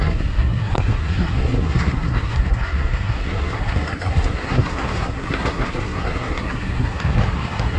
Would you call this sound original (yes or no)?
no